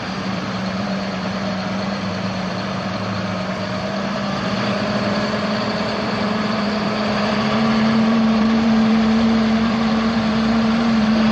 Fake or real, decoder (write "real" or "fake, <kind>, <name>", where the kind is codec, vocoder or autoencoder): fake, vocoder, BigVGAN v2